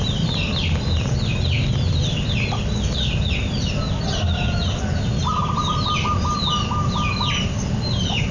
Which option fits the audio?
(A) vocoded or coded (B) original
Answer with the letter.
B